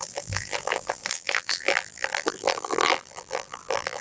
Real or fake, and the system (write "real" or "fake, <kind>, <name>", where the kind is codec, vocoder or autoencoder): fake, vocoder, BigVGAN v2